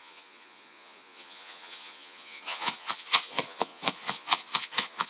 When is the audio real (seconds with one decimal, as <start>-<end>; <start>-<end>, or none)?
none